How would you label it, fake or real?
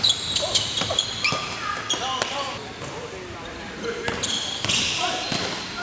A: real